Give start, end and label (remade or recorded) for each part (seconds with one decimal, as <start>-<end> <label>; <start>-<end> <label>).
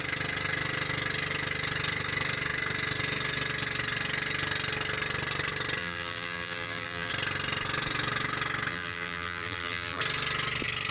0.0-5.8 recorded; 5.8-7.1 remade; 7.1-8.7 recorded; 8.7-10.0 remade; 10.0-10.9 recorded